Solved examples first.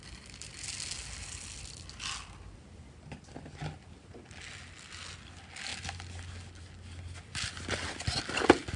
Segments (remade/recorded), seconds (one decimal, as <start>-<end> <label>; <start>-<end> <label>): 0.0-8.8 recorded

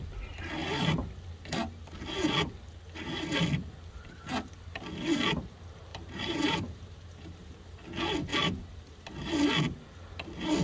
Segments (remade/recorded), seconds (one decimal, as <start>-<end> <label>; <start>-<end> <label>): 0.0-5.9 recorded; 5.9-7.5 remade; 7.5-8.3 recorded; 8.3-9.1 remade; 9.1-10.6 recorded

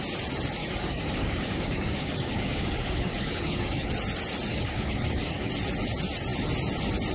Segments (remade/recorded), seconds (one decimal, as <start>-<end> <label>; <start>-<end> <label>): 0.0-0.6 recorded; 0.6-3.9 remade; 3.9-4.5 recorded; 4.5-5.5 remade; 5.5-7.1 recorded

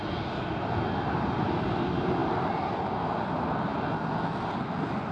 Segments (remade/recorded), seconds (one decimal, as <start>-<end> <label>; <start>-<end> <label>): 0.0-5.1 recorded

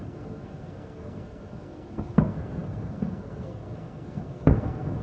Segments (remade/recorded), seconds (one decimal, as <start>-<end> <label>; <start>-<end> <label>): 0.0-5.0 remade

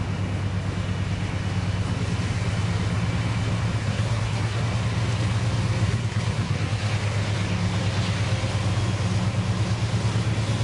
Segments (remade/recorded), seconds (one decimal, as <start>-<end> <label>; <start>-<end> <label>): 0.0-3.8 recorded; 3.8-4.6 remade; 4.6-5.8 recorded; 5.8-6.9 remade; 6.9-10.6 recorded

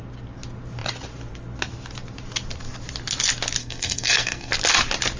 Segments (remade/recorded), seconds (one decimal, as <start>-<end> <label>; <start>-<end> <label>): 0.0-3.6 recorded; 3.6-4.5 remade; 4.5-5.2 recorded